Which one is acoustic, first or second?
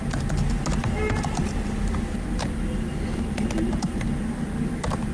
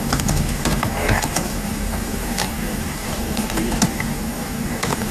first